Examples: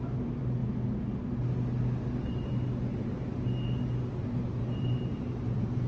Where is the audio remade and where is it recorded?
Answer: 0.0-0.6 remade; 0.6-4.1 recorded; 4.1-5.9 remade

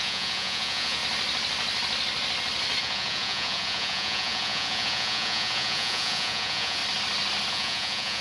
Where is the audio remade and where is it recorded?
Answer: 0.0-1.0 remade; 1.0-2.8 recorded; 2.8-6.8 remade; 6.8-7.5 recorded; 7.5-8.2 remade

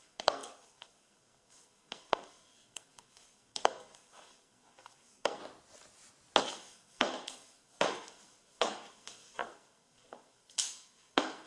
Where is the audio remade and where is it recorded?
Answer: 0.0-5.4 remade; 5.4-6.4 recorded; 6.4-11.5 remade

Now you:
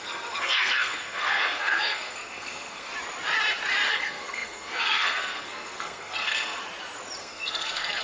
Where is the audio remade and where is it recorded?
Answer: 0.0-2.9 remade; 2.9-3.9 recorded; 3.9-6.6 remade; 6.6-7.2 recorded; 7.2-8.0 remade

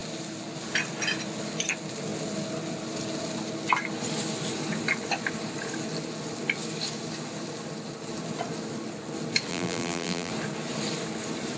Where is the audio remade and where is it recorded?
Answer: 0.0-9.5 recorded; 9.5-10.3 remade; 10.3-11.6 recorded

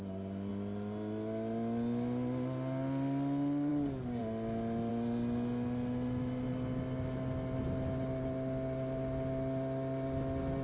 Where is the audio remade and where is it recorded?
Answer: 0.0-10.6 recorded

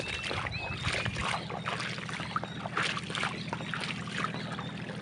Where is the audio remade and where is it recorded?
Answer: 0.0-5.0 recorded

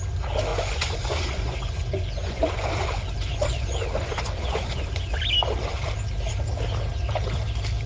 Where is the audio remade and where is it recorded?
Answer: 0.0-0.5 recorded; 0.5-5.2 remade; 5.2-7.9 recorded